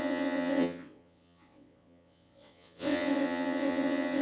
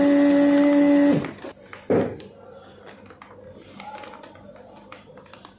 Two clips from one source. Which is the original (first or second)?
second